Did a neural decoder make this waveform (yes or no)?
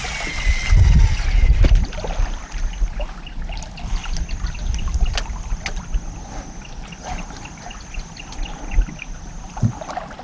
no